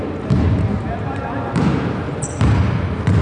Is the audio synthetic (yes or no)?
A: yes